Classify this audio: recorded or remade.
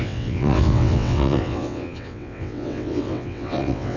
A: remade